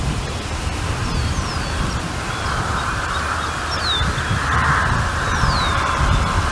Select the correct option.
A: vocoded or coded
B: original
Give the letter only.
B